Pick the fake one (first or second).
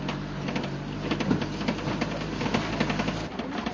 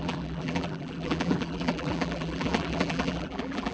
second